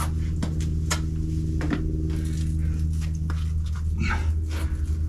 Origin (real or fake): real